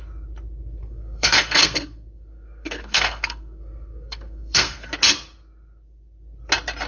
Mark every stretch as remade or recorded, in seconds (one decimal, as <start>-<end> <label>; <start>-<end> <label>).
0.0-0.8 recorded; 0.8-4.9 remade; 4.9-6.9 recorded